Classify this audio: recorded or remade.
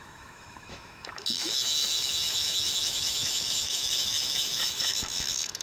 remade